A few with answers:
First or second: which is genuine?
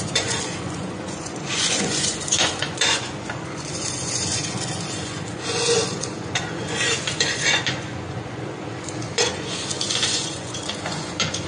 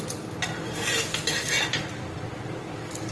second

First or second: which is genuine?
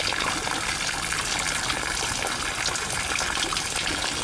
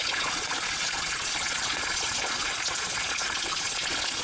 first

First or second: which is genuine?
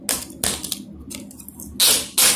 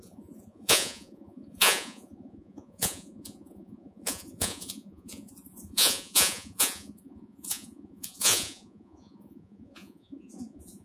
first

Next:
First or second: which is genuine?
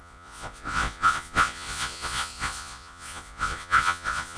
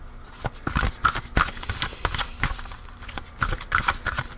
second